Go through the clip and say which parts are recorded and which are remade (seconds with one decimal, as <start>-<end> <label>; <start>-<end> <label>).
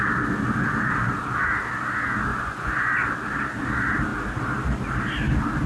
0.0-2.3 recorded; 2.3-2.9 remade; 2.9-5.7 recorded